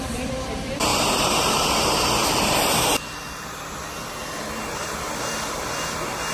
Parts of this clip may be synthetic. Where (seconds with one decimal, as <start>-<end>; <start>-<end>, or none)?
0.9-1.6; 2.2-2.7; 4.2-5.1